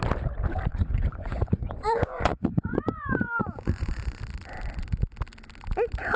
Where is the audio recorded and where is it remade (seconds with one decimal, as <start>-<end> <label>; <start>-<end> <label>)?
0.0-0.7 recorded; 0.7-4.2 remade; 4.2-6.2 recorded